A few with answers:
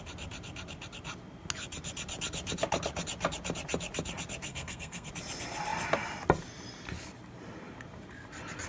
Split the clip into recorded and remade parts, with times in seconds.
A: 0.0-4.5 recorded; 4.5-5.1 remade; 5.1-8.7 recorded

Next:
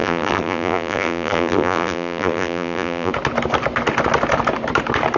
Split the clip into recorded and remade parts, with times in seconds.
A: 0.0-3.1 remade; 3.1-5.2 recorded

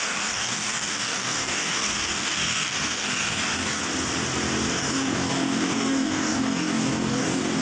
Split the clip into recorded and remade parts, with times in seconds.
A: 0.0-3.8 remade; 3.8-4.7 recorded; 4.7-7.6 remade

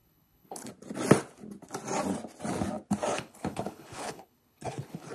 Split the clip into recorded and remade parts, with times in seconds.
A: 0.0-0.7 remade; 0.7-3.1 recorded; 3.1-5.1 remade

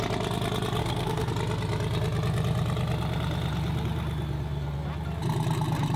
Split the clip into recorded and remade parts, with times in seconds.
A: 0.0-0.8 recorded; 0.8-1.3 remade; 1.3-6.0 recorded

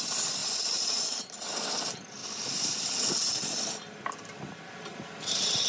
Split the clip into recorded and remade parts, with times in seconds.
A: 0.0-5.7 recorded

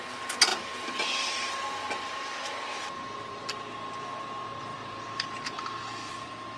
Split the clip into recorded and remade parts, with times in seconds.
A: 0.0-0.5 recorded; 0.5-3.4 remade; 3.4-4.7 recorded; 4.7-6.1 remade; 6.1-6.6 recorded